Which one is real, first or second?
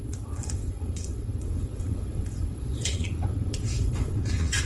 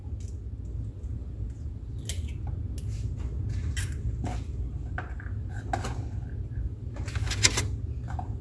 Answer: second